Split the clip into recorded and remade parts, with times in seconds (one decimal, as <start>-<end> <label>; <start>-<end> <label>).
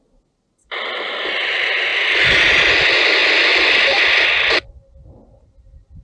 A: 0.0-6.0 recorded